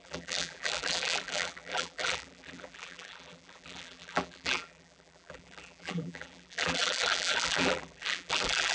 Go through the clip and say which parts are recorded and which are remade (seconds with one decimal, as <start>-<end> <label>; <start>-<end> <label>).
0.0-8.7 remade